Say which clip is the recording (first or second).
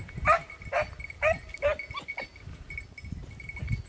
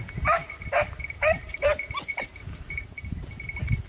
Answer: first